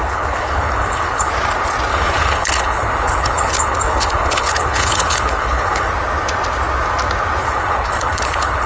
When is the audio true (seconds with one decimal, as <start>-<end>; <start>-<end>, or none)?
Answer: 1.3-1.9; 5.9-7.4